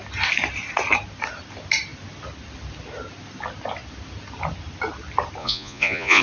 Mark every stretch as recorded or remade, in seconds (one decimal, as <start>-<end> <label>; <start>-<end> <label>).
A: 0.0-5.4 recorded; 5.4-6.2 remade